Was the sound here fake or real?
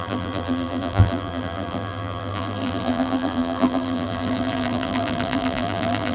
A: fake